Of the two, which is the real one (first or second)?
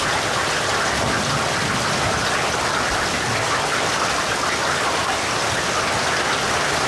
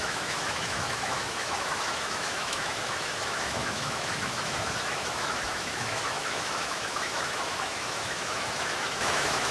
first